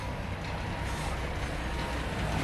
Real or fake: real